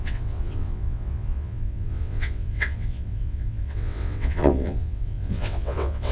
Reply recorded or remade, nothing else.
remade